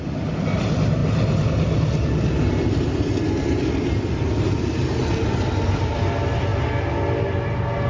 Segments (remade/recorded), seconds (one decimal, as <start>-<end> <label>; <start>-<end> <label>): 0.0-7.9 recorded